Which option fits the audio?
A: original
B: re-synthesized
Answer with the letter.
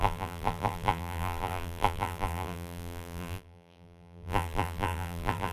B